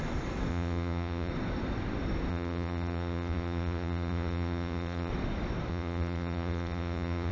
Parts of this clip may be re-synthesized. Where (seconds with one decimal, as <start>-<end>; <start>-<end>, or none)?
0.5-1.3; 2.3-5.1; 5.7-7.3